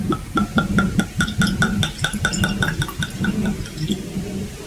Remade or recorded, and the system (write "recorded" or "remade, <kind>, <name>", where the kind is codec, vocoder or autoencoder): recorded